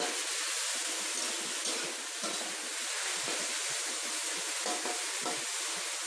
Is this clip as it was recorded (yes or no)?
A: yes